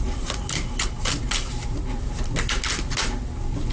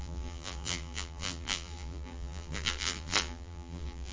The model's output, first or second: second